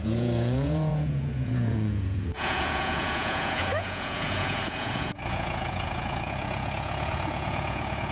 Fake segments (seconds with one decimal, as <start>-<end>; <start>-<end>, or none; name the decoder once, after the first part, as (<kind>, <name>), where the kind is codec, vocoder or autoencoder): 0.0-8.1 (vocoder, Vocos)